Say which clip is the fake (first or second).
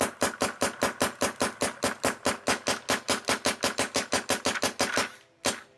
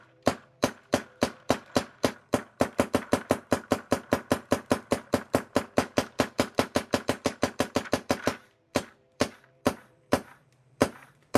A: second